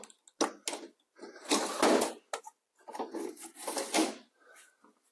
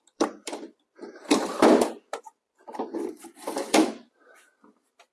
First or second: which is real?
first